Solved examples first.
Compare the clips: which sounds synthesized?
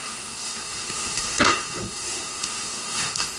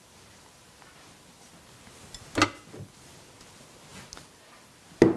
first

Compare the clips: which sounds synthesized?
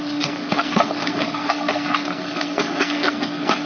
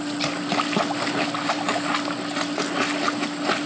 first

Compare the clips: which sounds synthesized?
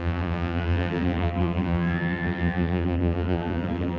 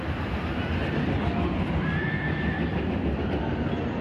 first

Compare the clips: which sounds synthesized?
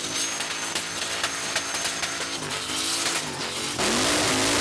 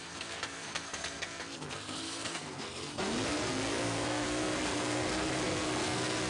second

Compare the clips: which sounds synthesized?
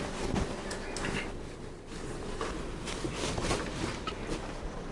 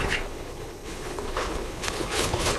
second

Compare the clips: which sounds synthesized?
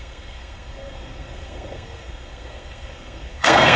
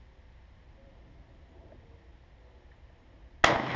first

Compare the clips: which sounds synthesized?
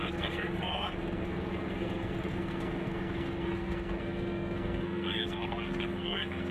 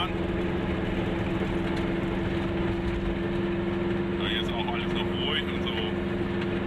first